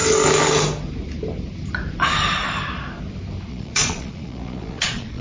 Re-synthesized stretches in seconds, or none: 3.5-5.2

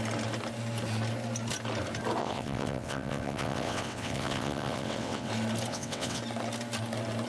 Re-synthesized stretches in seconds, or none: 2.2-5.3; 5.7-6.2

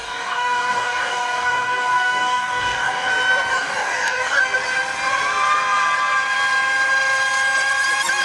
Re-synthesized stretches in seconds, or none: 0.0-3.1; 3.5-4.4

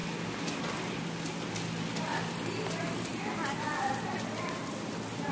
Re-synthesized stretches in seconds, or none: none

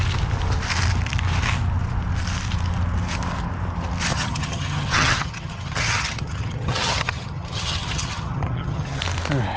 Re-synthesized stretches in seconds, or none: 4.1-9.0

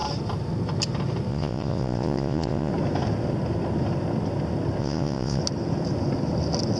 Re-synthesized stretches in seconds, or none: 1.3-2.7; 4.8-5.4